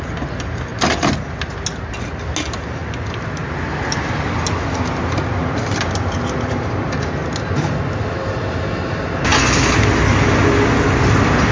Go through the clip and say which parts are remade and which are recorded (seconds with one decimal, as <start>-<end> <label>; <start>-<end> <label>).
0.0-11.5 recorded

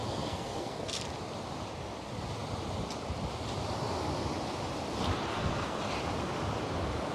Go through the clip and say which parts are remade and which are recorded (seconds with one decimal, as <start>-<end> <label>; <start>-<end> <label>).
0.0-1.0 remade; 1.0-5.3 recorded; 5.3-5.8 remade; 5.8-7.1 recorded